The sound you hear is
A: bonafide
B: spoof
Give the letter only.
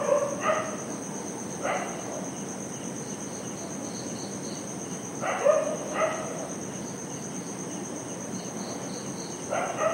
A